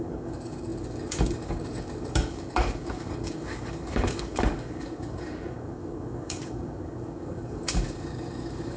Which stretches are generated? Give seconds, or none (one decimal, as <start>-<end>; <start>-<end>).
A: 0.0-8.8